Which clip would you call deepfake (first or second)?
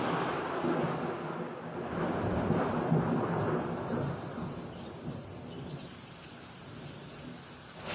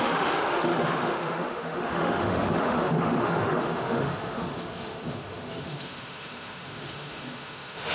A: second